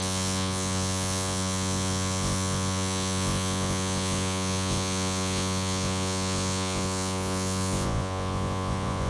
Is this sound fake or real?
fake